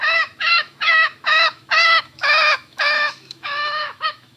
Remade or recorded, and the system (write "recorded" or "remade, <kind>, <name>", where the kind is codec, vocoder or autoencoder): remade, autoencoder, DAC-VAE